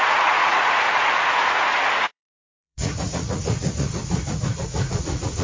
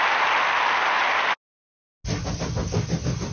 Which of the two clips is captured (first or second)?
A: second